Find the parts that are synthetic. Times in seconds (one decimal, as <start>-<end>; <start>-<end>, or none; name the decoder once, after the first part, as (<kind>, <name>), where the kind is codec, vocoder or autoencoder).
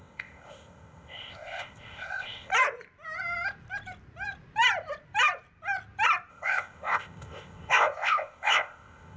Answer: 0.0-2.5 (codec, ZipCodec); 6.3-9.2